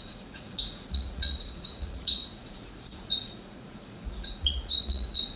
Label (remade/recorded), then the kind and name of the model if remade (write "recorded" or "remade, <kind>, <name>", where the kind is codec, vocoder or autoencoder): remade, vocoder, Vocos